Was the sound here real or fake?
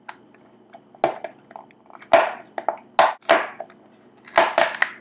real